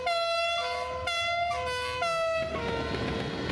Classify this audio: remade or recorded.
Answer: recorded